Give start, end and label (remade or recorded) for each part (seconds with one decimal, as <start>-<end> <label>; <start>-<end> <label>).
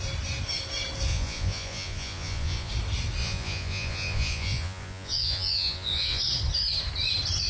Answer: 0.0-1.1 recorded; 1.1-2.7 remade; 2.7-3.2 recorded; 3.2-6.2 remade; 6.2-7.5 recorded